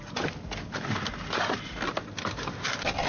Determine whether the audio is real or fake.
real